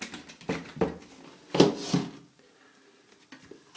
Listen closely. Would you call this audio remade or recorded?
recorded